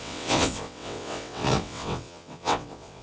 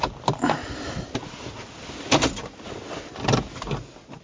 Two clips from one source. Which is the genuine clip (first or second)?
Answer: second